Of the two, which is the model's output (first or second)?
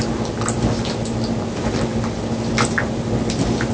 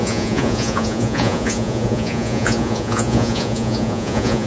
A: second